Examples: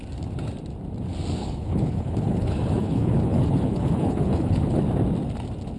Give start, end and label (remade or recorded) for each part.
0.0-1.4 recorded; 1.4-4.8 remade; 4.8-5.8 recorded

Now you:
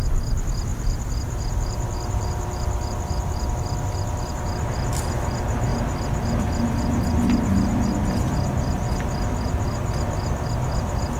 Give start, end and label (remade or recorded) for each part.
0.0-0.7 recorded; 0.7-3.5 remade; 3.5-11.2 recorded